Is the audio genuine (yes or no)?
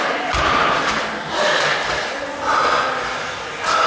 yes